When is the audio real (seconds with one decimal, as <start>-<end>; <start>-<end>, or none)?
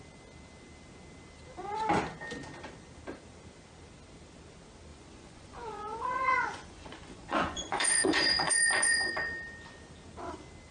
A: 0.0-4.9; 9.1-10.7